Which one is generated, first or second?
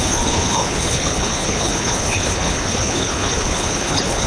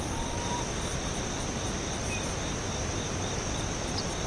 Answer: first